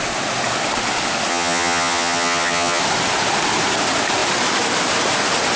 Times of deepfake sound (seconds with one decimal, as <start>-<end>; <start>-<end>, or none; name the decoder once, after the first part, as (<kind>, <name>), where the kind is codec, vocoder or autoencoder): 1.3-2.8 (vocoder, HiFi-GAN)